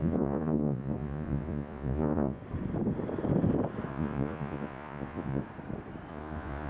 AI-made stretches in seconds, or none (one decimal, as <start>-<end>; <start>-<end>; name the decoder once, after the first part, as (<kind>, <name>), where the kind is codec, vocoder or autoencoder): 0.0-2.4 (vocoder, Vocos); 3.9-5.4; 6.1-6.7

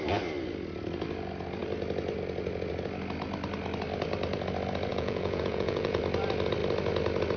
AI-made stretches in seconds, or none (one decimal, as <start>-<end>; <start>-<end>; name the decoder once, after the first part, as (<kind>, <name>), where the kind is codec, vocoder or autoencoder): 4.9-6.0 (vocoder, Vocos)

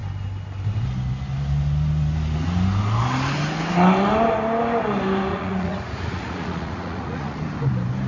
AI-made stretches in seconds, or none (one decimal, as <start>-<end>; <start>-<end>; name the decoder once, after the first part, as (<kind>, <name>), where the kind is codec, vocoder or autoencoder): 5.3-7.4 (vocoder, Vocos)

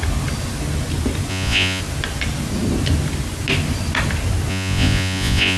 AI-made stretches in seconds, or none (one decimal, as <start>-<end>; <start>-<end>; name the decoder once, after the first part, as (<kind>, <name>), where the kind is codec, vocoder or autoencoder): 1.3-1.8 (vocoder, Vocos); 4.5-5.6

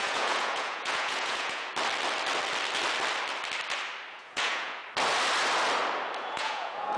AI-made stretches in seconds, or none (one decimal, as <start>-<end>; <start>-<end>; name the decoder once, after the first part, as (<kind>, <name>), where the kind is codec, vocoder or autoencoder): 0.0-1.7 (vocoder, Vocos); 4.1-4.8; 6.2-7.0